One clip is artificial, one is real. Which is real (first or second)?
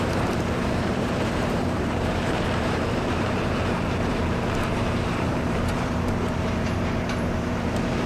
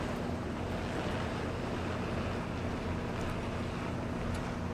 second